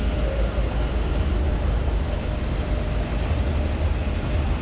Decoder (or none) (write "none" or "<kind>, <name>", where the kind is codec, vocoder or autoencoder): none